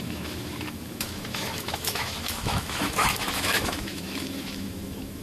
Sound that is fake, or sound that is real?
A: fake